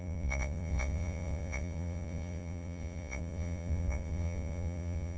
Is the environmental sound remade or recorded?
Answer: remade